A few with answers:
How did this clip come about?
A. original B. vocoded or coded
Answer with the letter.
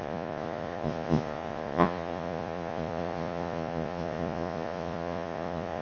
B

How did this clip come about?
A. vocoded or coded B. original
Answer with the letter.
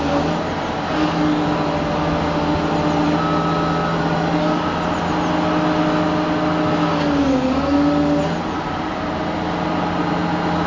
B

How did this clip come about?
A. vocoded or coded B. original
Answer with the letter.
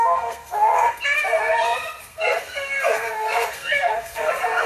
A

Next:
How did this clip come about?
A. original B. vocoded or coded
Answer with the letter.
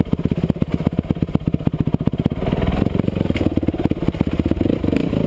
A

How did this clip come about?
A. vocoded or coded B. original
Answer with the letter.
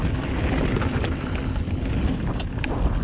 B